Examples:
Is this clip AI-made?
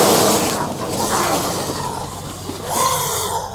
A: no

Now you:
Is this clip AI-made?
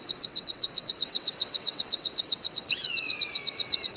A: yes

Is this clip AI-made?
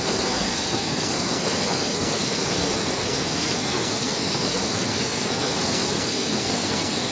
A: yes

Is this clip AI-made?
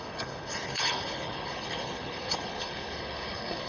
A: yes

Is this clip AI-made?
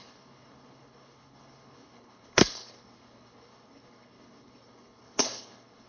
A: yes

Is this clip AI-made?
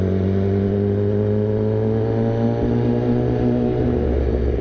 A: no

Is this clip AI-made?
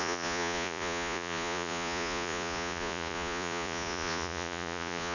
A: yes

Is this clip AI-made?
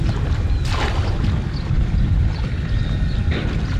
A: no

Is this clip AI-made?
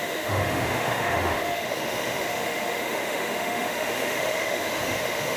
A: yes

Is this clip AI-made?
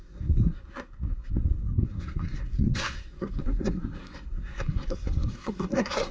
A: yes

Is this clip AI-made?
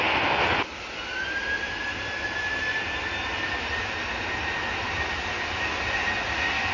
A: no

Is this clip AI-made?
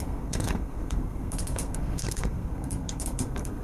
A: yes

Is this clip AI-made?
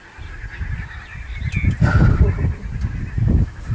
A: no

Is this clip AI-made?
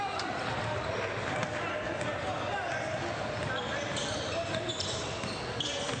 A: no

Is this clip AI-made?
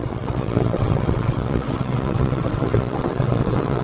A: yes